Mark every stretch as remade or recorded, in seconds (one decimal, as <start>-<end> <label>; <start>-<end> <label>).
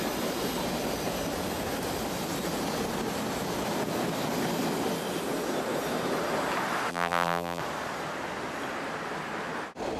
0.0-6.9 recorded; 6.9-7.6 remade; 7.6-10.0 recorded